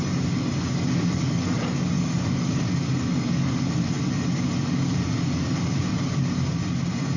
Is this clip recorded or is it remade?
recorded